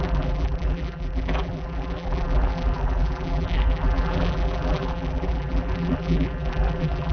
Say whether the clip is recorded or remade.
remade